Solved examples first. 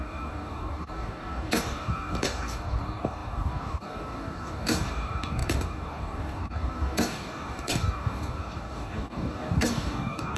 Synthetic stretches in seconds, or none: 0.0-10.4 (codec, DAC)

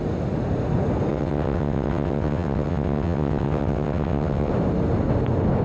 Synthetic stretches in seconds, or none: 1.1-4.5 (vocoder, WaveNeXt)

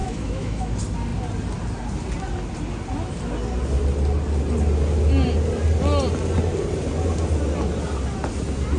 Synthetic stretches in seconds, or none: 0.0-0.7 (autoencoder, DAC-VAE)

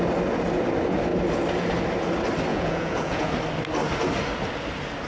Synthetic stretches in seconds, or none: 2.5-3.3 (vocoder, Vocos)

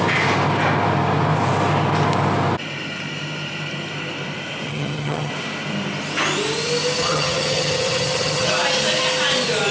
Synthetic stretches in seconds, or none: 4.7-5.3 (vocoder, HiFi-GAN); 7.0-8.5

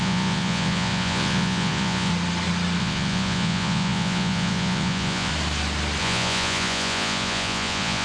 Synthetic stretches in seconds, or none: 0.0-2.1 (vocoder, Vocos); 2.8-5.3; 6.0-8.0